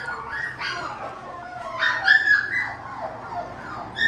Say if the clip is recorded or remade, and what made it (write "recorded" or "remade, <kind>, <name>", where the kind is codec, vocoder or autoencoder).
recorded